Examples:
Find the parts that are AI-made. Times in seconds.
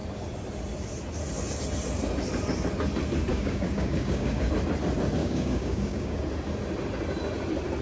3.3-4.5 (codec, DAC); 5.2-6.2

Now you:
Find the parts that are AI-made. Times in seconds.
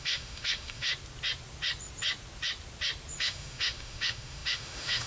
0.0-0.9 (autoencoder, DAC-VAE); 3.2-5.1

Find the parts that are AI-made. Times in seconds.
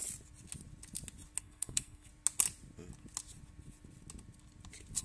1.4-2.1 (codec, SNAC)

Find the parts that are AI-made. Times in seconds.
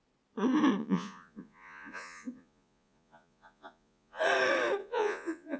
0.8-4.2 (vocoder, Vocos); 4.8-5.6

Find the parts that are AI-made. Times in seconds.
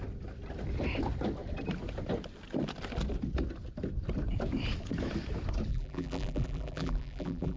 5.7-7.6 (vocoder, BigVGAN v2)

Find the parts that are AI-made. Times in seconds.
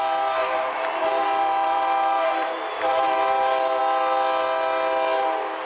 0.4-3.8 (vocoder, BigVGAN v2)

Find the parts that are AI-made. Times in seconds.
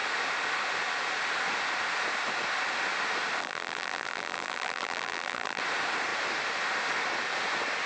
3.4-5.6 (vocoder, BigVGAN v2)